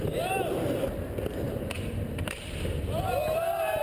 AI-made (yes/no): yes